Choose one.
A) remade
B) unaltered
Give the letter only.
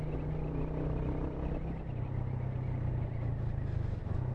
B